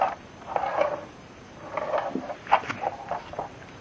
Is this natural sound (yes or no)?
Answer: yes